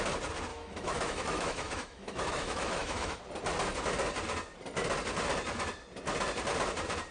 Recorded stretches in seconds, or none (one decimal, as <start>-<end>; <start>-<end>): 0.0-0.5; 3.2-7.1